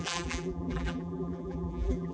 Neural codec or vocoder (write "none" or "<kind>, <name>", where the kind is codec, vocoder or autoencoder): vocoder, BigVGAN v2